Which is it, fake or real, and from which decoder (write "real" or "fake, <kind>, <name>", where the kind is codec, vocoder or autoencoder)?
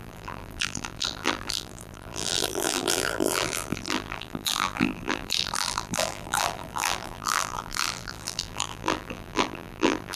fake, vocoder, BigVGAN v2